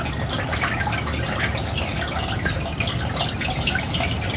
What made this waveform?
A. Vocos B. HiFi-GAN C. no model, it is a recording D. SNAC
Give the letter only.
C